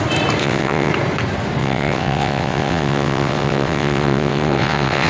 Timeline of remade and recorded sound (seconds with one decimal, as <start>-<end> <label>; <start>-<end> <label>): 0.0-0.4 recorded; 0.4-0.9 remade; 0.9-1.6 recorded; 1.6-5.1 remade